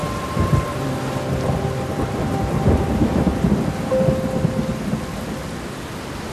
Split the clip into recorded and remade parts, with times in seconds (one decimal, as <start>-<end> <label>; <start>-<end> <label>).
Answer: 0.0-1.0 remade; 1.0-3.3 recorded; 3.3-4.8 remade; 4.8-6.3 recorded